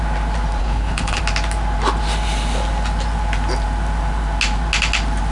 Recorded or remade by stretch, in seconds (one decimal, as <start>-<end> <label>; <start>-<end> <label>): 0.0-0.6 recorded; 0.6-1.2 remade; 1.2-5.3 recorded